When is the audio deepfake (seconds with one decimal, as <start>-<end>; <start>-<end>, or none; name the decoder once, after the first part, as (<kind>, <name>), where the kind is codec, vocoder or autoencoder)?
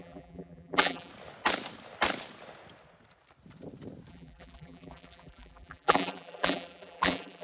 0.0-1.1 (vocoder, BigVGAN v2); 4.1-7.4